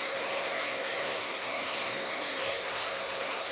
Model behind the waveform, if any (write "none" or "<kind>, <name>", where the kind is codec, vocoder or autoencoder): codec, SNAC